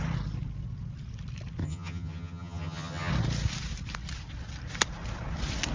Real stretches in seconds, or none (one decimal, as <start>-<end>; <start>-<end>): 0.0-1.6; 3.1-5.7